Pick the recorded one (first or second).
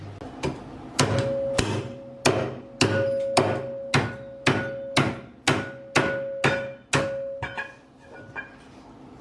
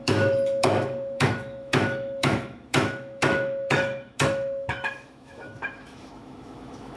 first